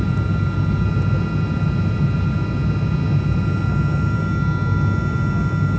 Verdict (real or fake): real